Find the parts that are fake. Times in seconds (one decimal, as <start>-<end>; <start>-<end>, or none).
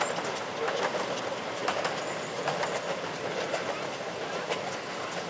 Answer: none